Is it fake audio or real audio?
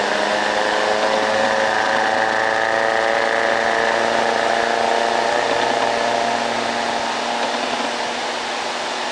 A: real